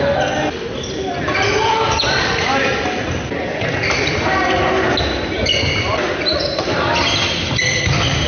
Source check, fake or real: real